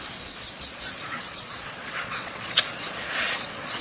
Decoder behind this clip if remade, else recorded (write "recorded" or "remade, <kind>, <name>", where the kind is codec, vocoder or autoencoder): remade, vocoder, Vocos